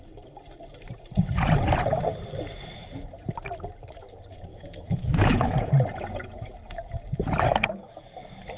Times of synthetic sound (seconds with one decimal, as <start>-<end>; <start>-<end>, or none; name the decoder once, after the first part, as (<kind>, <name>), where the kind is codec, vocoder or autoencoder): 4.5-5.7 (autoencoder, DAC-VAE); 7.5-8.0